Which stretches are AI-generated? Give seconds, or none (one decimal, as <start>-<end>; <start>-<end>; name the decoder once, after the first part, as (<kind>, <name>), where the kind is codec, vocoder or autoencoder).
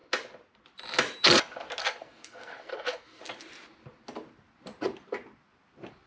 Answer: 1.8-3.2 (codec, SNAC)